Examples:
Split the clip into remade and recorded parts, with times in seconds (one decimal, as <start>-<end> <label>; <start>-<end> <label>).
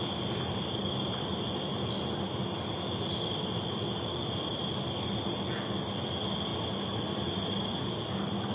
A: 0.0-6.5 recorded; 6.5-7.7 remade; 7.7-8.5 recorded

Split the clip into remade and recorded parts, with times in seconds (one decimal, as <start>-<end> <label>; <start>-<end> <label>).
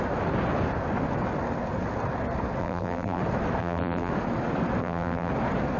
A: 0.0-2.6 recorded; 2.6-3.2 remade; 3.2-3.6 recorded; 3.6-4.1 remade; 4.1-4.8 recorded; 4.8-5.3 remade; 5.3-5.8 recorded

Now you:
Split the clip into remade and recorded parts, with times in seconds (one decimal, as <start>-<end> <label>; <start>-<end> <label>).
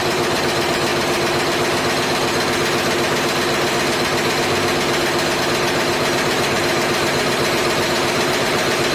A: 0.0-0.9 remade; 0.9-5.4 recorded; 5.4-8.9 remade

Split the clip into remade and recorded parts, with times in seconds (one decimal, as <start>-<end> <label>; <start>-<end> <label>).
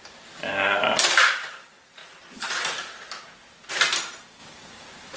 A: 0.0-2.0 remade; 2.0-3.7 recorded; 3.7-5.2 remade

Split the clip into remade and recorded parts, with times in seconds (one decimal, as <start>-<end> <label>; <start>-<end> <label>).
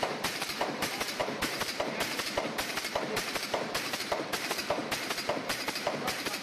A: 0.0-4.8 remade; 4.8-5.4 recorded; 5.4-6.4 remade